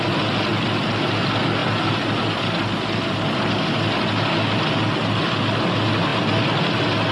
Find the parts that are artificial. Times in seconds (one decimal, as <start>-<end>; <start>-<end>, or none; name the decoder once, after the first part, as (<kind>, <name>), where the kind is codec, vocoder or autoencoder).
none